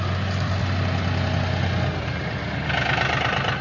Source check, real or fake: real